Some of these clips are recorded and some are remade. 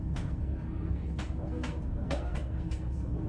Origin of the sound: remade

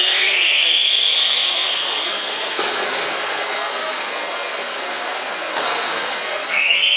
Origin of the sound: remade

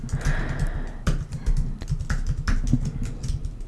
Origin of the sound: recorded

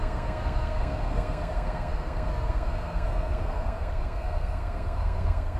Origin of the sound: remade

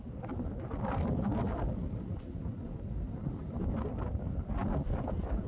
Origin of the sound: recorded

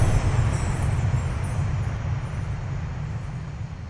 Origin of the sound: recorded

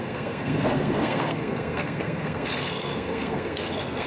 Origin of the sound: remade